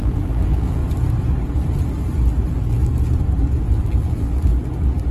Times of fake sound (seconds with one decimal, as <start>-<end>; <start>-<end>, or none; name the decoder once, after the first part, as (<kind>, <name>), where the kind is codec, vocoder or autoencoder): 0.0-0.8 (vocoder, BigVGAN v2); 2.5-2.9; 3.6-4.5